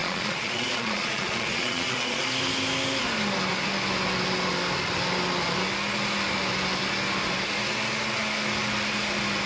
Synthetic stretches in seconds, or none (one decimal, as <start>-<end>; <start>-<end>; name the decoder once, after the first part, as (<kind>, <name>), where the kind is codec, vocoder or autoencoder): 0.0-2.2 (vocoder, Vocos)